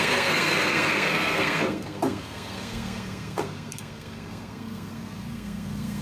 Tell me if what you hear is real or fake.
fake